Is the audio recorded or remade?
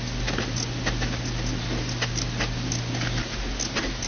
recorded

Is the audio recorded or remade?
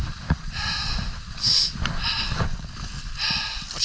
recorded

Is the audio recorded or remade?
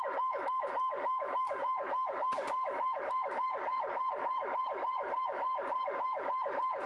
remade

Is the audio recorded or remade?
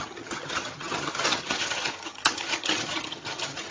remade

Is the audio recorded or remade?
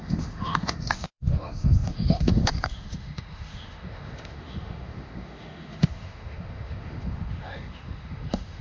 remade